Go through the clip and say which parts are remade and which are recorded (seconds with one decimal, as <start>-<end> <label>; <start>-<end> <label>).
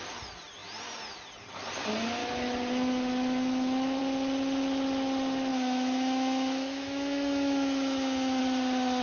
0.0-2.2 recorded; 2.2-4.0 remade; 4.0-5.5 recorded; 5.5-8.4 remade; 8.4-9.0 recorded